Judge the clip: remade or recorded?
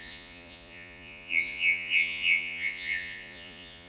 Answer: remade